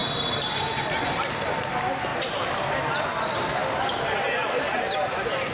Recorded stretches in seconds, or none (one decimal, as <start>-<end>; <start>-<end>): 0.0-3.6; 5.1-5.5